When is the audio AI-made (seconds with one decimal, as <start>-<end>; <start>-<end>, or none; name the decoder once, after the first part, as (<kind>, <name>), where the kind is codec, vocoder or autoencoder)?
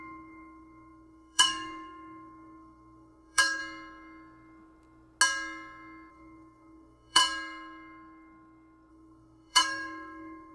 0.0-3.6 (codec, SNAC); 6.1-7.2; 8.9-10.5